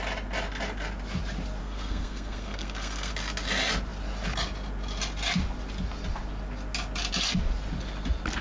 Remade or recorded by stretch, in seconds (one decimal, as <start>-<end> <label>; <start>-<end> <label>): 0.0-1.6 recorded; 1.6-3.1 remade; 3.1-8.4 recorded

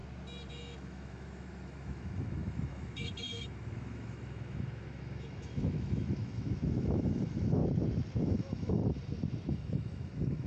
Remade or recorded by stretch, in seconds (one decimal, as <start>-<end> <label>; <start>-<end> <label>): 0.0-0.5 recorded; 0.5-7.6 remade; 7.6-8.2 recorded; 8.2-8.8 remade; 8.8-9.5 recorded; 9.5-10.5 remade

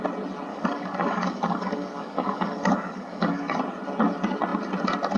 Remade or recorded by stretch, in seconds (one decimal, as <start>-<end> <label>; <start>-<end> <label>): 0.0-0.5 recorded; 0.5-3.6 remade; 3.6-5.2 recorded

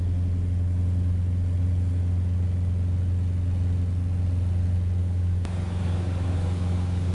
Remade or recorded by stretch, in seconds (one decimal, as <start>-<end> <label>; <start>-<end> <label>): 0.0-5.0 recorded; 5.0-7.1 remade

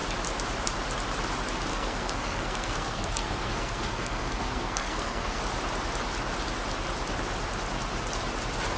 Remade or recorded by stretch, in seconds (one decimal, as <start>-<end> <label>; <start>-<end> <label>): 0.0-1.7 recorded; 1.7-5.4 remade; 5.4-8.8 recorded

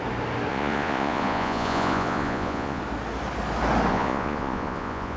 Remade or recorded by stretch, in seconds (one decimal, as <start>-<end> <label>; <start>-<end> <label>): 0.0-0.5 recorded; 0.5-2.8 remade; 2.8-3.9 recorded; 3.9-5.2 remade

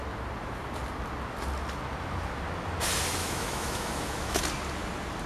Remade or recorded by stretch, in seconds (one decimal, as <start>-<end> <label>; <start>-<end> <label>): 0.0-3.2 recorded; 3.2-4.4 remade; 4.4-5.3 recorded

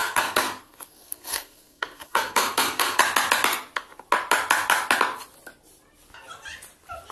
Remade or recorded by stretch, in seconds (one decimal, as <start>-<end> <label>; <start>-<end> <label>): 0.0-3.0 remade; 3.0-7.1 recorded